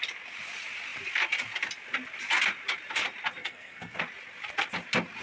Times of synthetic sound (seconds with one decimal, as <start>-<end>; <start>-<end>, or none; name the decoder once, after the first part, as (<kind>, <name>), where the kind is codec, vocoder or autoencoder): 3.4-4.0 (codec, SNAC)